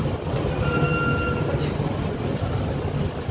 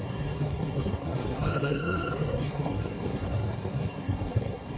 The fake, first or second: second